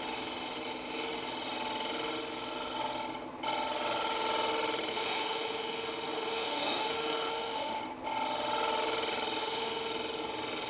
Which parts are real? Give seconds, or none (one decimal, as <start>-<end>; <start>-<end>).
0.0-4.9; 7.8-9.4; 9.9-10.7